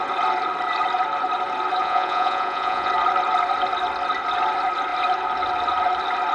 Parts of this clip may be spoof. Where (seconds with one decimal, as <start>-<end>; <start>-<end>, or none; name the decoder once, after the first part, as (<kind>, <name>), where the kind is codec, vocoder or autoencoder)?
1.8-2.9 (vocoder, Vocos)